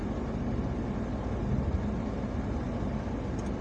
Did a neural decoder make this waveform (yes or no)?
no